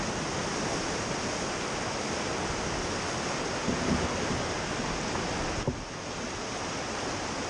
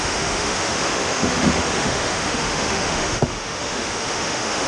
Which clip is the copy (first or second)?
second